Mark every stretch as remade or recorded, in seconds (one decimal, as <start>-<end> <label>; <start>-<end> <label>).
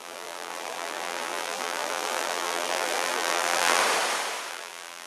0.0-3.8 remade; 3.8-4.5 recorded; 4.5-5.1 remade